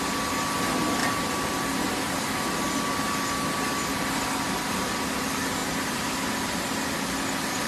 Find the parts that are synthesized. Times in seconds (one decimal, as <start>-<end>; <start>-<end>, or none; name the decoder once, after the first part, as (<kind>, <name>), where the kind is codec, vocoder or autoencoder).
none